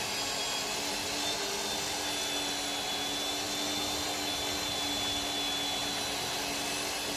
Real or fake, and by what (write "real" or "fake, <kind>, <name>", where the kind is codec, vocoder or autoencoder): real